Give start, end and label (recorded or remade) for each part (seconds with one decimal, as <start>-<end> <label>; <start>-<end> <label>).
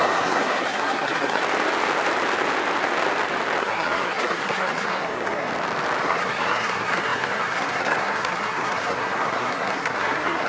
0.0-1.4 remade; 1.4-3.6 recorded; 3.6-5.5 remade; 5.5-6.0 recorded; 6.0-10.5 remade